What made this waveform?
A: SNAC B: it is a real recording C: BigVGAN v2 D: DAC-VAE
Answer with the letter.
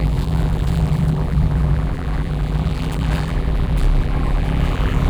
C